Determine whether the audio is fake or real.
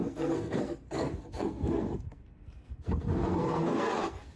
fake